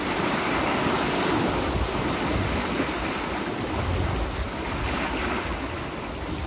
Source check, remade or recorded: recorded